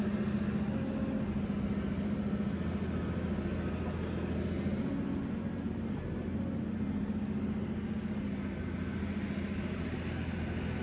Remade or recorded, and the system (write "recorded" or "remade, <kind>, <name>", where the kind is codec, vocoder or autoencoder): recorded